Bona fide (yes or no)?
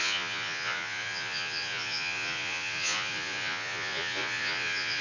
no